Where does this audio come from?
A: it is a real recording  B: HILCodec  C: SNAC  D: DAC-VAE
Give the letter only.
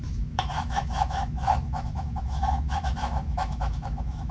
D